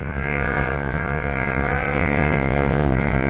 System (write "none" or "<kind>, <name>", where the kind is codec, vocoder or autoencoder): vocoder, WaveNeXt